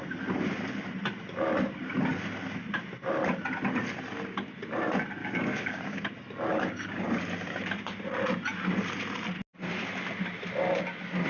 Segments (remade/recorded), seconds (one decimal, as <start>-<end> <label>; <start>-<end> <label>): 0.0-5.2 recorded; 5.2-6.0 remade; 6.0-6.5 recorded; 6.5-7.2 remade; 7.2-11.3 recorded